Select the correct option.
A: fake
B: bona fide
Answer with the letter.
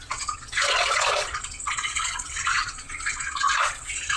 A